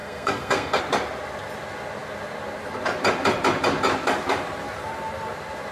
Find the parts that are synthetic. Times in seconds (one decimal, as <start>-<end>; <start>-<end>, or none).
0.0-0.8